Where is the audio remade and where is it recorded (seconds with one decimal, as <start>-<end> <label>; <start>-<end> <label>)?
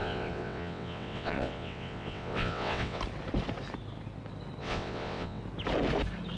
0.0-3.0 remade; 3.0-4.6 recorded; 4.6-5.4 remade; 5.4-6.4 recorded